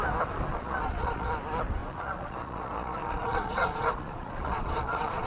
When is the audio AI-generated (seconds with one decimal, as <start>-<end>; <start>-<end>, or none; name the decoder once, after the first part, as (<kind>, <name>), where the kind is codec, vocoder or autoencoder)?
0.5-1.3 (vocoder, Vocos); 1.8-5.3